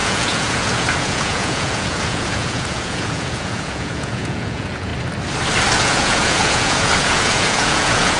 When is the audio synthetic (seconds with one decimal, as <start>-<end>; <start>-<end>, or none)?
0.0-4.9; 5.8-8.2